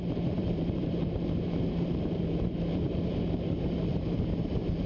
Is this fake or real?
fake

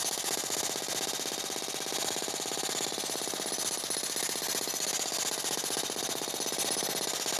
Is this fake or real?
real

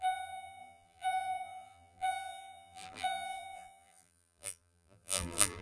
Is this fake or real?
fake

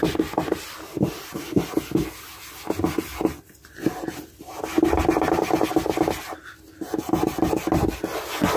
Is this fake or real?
real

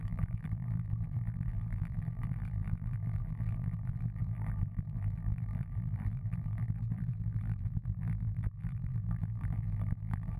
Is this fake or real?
fake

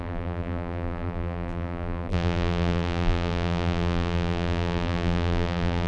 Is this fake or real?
fake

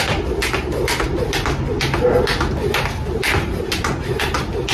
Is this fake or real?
real